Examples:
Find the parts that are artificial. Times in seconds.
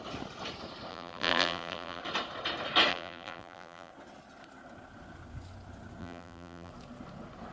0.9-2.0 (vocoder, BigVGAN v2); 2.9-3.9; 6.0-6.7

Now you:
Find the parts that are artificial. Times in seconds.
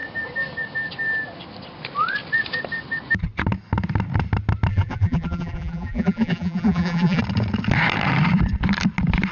4.7-7.2 (vocoder, BigVGAN v2)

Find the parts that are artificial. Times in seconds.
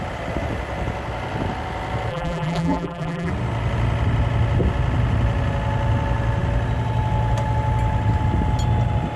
2.1-3.3 (vocoder, BigVGAN v2)